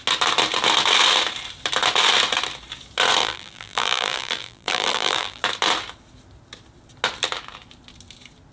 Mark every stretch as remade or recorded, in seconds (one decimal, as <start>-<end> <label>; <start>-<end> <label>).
0.0-3.2 recorded; 3.2-5.4 remade; 5.4-8.5 recorded